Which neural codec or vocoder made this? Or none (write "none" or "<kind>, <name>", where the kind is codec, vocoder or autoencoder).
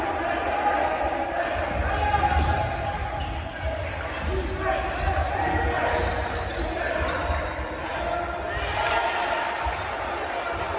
none